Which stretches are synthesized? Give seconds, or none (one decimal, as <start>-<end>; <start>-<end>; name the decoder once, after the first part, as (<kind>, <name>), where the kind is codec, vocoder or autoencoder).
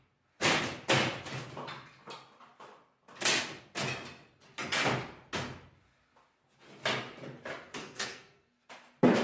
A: 7.8-8.7 (codec, SNAC)